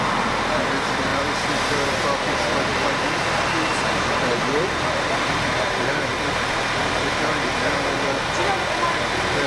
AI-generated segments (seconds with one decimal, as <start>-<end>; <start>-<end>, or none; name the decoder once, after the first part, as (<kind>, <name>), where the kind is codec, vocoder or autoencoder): none